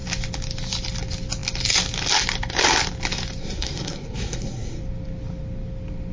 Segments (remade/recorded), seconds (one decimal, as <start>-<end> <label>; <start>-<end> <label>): 0.0-3.4 recorded; 3.4-4.8 remade; 4.8-6.1 recorded